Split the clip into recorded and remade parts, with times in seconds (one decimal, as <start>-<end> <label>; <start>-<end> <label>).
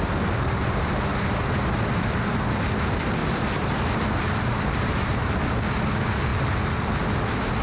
0.0-3.2 recorded; 3.2-5.4 remade; 5.4-7.6 recorded